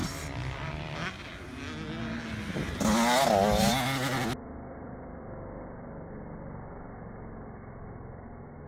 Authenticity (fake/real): real